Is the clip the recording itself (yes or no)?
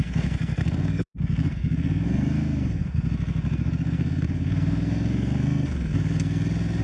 no